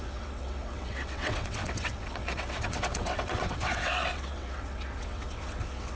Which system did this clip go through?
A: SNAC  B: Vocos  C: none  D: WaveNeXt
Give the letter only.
D